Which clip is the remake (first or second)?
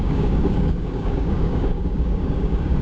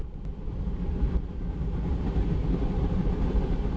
first